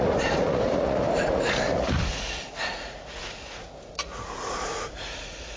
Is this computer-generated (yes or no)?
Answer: yes